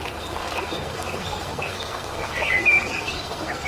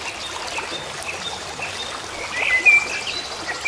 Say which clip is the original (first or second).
second